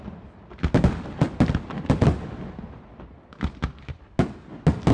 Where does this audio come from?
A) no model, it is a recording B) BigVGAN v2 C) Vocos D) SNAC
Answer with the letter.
A